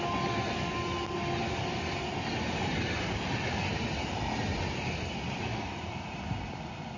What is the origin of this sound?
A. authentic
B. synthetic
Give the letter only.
A